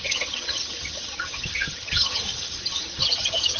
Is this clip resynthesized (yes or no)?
yes